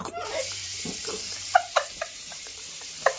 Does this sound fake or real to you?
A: fake